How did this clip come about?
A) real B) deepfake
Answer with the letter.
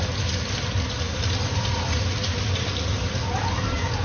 A